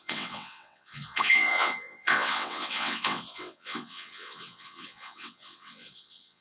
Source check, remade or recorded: remade